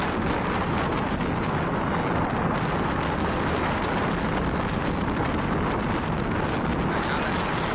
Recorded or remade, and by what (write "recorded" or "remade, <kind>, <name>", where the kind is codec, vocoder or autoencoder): recorded